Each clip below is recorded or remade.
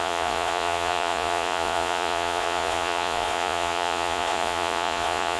remade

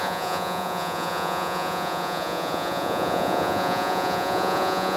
remade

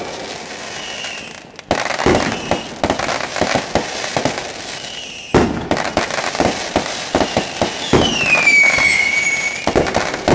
recorded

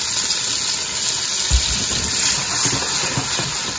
recorded